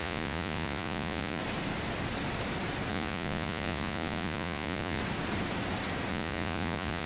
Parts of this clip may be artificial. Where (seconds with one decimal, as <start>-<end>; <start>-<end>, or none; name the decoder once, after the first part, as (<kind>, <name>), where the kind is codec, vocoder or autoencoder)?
0.0-1.4 (vocoder, Vocos); 2.9-5.0; 6.1-7.1